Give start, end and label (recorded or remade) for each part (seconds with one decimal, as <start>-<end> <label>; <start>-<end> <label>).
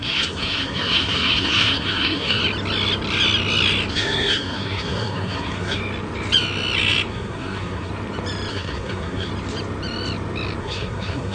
0.0-2.4 remade; 2.4-3.9 recorded; 3.9-5.8 remade; 5.8-7.1 recorded; 7.1-7.9 remade; 7.9-8.5 recorded; 8.5-9.3 remade; 9.3-10.6 recorded; 10.6-11.3 remade